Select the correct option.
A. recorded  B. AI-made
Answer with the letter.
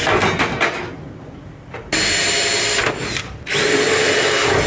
A